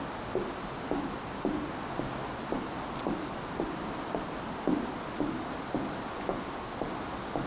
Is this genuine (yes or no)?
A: yes